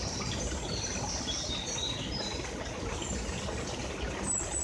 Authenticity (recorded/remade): recorded